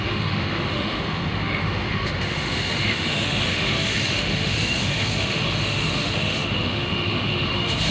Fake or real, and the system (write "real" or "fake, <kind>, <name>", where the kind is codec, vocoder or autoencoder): fake, autoencoder, DAC-VAE